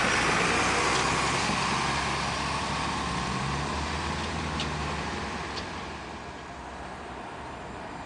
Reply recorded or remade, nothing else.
recorded